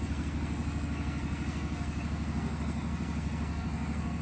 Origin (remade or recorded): remade